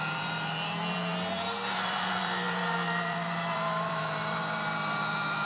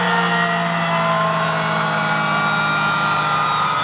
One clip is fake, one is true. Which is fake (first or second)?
first